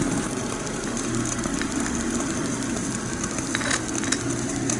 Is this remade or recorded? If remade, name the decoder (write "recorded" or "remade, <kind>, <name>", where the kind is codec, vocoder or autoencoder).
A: recorded